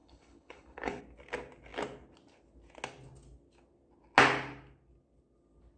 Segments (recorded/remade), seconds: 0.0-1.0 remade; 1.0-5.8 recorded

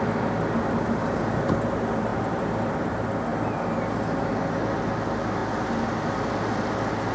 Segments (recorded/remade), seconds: 0.0-7.1 recorded

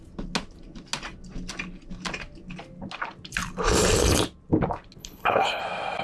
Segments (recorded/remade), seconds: 0.0-5.0 recorded; 5.0-5.6 remade; 5.6-6.0 recorded